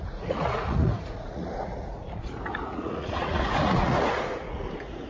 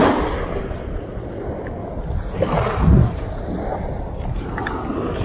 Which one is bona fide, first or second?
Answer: second